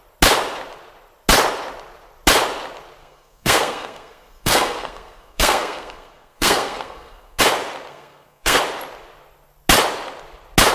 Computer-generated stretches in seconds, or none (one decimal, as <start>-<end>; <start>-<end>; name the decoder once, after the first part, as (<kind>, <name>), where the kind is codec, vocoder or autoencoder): 3.0-7.4 (codec, SNAC); 7.9-8.6